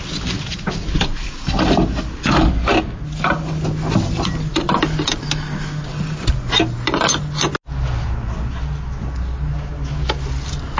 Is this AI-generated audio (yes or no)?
no